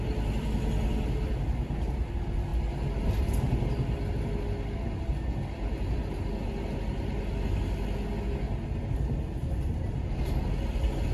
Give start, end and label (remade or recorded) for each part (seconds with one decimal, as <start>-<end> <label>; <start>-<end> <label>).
0.0-11.1 recorded